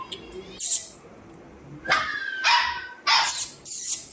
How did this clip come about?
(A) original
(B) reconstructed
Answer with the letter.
A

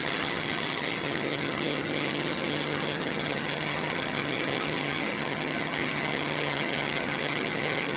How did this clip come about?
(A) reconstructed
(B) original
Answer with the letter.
A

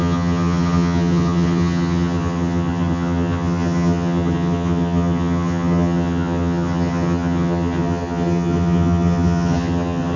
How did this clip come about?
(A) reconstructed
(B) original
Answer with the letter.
A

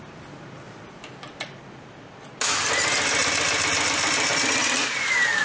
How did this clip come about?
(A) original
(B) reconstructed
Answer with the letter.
A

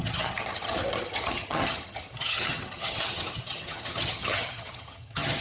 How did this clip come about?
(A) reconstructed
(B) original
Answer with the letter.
A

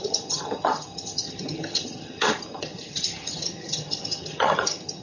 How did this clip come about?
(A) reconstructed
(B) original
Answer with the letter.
A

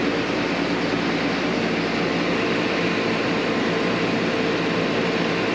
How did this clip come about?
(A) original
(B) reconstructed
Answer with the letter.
A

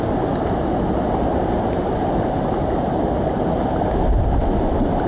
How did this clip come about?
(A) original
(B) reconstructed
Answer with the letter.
A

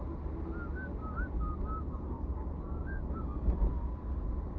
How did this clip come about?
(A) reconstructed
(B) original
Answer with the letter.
B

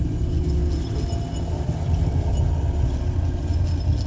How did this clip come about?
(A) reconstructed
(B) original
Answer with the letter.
B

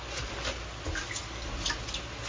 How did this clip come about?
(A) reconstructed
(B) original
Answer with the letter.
B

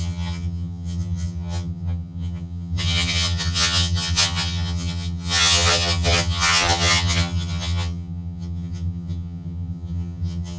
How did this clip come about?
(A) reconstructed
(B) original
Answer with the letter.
A